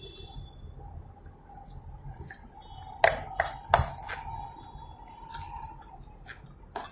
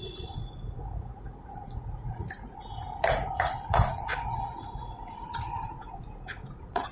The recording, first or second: first